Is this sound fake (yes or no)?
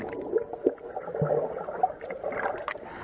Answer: no